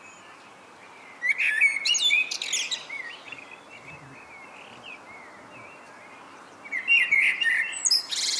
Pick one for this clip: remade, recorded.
recorded